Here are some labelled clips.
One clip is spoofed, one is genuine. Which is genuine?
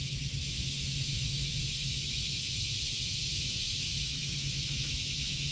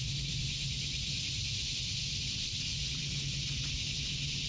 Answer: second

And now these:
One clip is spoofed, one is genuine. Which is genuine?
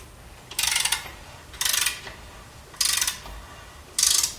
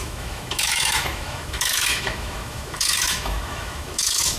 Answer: first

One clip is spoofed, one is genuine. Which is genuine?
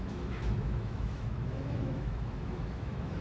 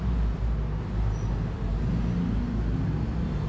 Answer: second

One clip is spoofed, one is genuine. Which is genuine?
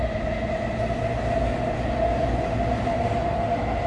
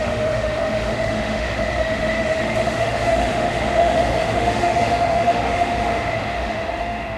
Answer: first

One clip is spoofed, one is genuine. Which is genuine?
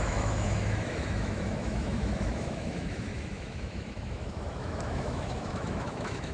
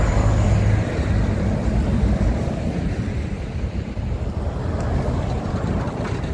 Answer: second